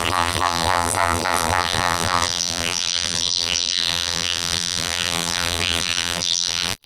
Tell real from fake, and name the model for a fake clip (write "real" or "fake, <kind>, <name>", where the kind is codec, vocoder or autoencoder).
fake, vocoder, BigVGAN v2